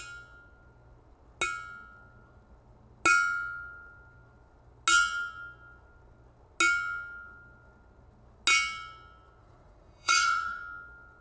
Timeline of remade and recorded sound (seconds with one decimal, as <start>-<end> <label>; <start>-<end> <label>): 0.0-9.4 recorded; 9.4-10.6 remade; 10.6-11.2 recorded